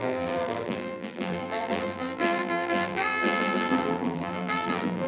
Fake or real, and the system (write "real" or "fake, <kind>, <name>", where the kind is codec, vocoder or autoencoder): fake, vocoder, BigVGAN v2